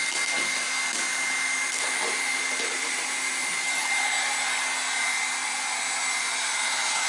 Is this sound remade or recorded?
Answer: recorded